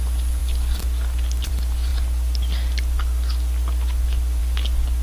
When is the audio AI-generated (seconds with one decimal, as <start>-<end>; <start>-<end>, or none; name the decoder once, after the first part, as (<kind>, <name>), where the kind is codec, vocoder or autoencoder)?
none